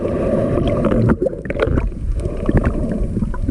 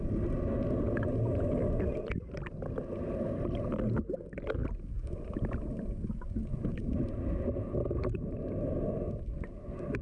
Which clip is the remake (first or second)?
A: first